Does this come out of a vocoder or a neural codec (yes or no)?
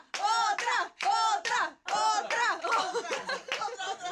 no